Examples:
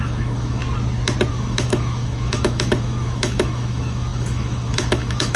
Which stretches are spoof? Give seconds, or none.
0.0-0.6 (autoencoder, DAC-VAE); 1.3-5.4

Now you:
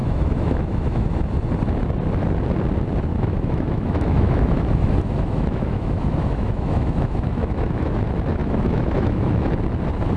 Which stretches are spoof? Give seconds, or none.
0.0-1.3 (autoencoder, DAC-VAE); 3.1-8.0; 8.4-9.5

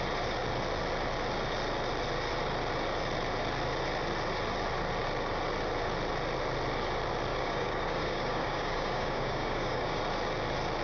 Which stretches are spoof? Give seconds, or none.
7.3-10.0 (codec, DAC)